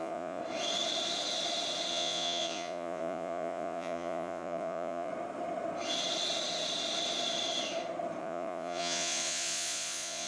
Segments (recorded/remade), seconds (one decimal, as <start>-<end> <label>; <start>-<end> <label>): 0.0-0.4 remade; 0.4-1.9 recorded; 1.9-5.1 remade; 5.1-8.2 recorded; 8.2-10.3 remade